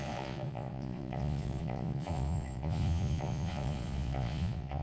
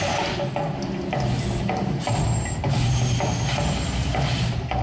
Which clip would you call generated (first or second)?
first